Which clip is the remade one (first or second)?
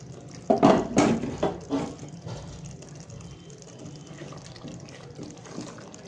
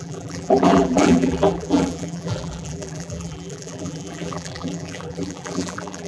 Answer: second